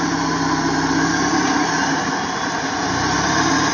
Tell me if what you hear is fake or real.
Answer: real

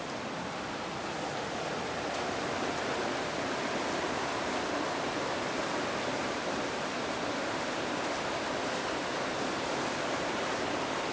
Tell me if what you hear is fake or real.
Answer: fake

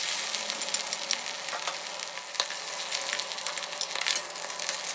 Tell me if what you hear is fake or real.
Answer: real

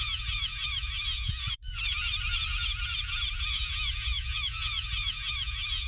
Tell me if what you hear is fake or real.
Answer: fake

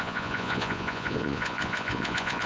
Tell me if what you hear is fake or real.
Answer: fake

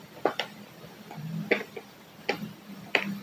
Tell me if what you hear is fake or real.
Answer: real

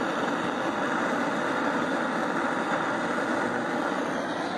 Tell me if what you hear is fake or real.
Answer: real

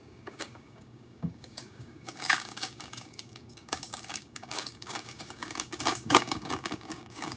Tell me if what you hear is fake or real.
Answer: fake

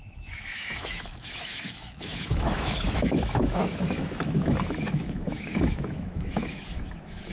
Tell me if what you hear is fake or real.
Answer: fake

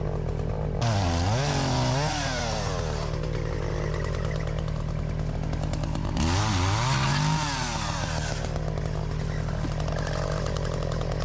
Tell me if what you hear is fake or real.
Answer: real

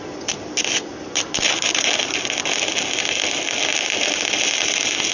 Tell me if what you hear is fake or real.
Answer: real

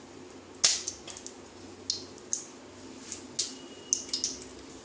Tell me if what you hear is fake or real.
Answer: real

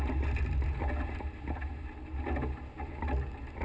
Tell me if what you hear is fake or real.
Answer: real